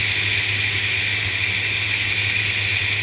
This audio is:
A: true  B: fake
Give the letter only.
A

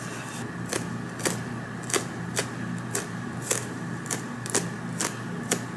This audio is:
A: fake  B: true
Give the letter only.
B